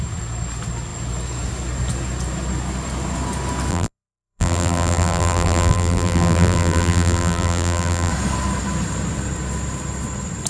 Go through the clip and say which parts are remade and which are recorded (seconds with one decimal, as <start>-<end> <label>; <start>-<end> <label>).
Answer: 0.0-3.7 recorded; 3.7-8.1 remade; 8.1-10.5 recorded